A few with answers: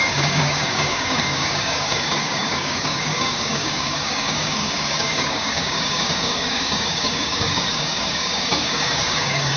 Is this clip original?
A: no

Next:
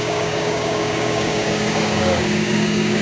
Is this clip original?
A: no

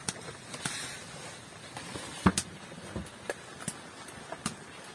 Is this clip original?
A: yes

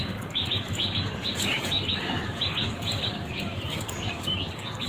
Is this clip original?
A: no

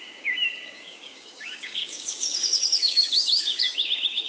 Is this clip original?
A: no